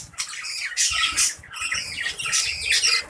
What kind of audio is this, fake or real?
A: real